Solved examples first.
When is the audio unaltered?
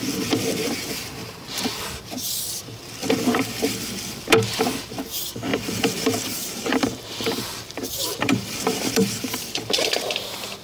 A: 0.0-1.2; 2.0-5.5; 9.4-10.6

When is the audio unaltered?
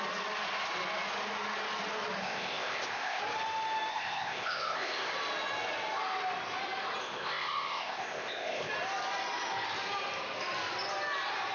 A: 0.0-2.2; 3.2-3.9; 5.1-7.0; 8.7-11.5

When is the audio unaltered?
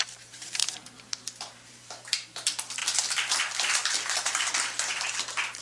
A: 0.6-1.4; 2.8-3.4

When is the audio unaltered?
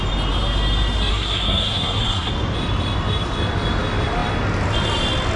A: 0.0-1.1; 2.3-5.4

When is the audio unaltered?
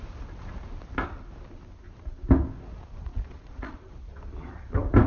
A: 0.0-3.1; 3.9-5.1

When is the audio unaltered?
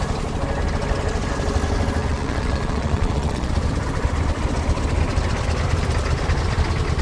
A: 0.0-2.0; 3.5-7.0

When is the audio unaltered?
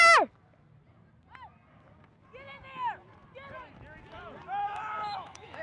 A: 0.0-4.6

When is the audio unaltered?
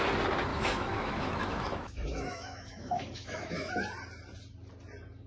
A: 0.0-0.5; 3.7-5.3